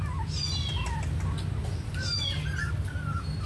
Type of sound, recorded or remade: recorded